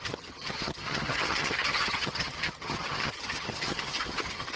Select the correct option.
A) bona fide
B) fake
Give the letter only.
B